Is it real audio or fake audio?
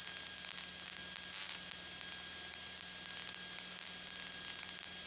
real